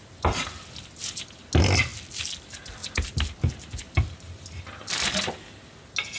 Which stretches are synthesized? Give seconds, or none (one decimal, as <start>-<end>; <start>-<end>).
none